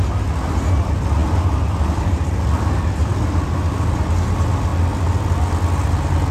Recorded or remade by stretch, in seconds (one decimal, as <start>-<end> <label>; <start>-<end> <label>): 0.0-6.3 recorded